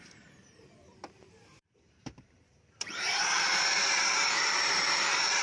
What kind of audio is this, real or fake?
fake